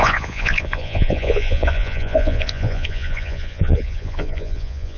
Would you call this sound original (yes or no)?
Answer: no